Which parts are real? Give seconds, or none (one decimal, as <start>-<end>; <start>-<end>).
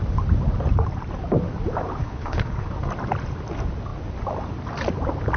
0.0-2.0; 2.7-5.4